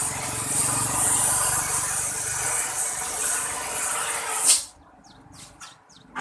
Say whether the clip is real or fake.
fake